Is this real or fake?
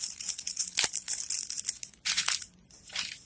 real